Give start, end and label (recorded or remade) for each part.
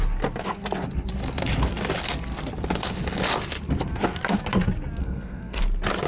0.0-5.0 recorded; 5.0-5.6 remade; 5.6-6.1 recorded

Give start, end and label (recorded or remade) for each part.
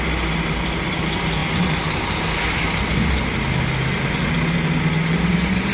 0.0-5.7 recorded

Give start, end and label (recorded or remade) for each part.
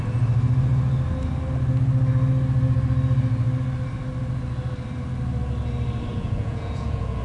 0.0-6.1 recorded; 6.1-7.2 remade